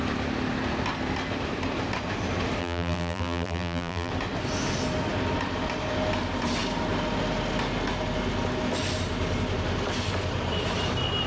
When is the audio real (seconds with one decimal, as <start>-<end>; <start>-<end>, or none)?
0.0-2.6; 4.1-11.3